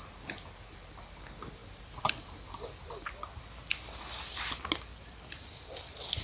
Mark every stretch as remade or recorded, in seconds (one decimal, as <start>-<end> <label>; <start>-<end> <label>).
0.0-4.9 recorded; 4.9-5.8 remade; 5.8-6.2 recorded